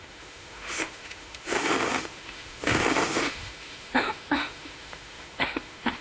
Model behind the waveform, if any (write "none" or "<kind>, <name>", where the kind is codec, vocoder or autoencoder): autoencoder, DAC-VAE